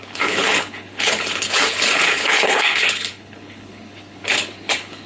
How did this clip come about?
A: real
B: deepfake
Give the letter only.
B